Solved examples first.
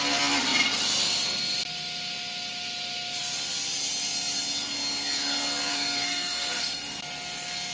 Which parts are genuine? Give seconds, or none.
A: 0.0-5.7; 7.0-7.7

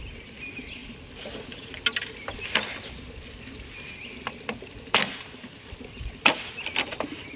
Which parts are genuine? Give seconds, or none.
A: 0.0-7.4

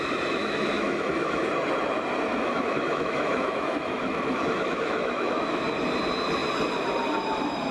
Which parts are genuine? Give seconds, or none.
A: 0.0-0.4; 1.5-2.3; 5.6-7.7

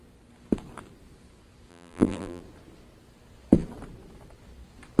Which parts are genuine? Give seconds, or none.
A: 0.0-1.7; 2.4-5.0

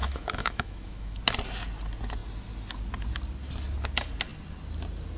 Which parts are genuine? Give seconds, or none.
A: 1.2-5.2

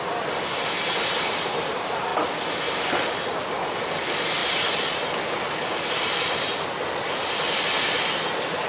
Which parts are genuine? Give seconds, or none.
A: 0.0-8.7

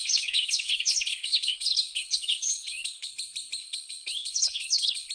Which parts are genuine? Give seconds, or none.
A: 3.1-3.6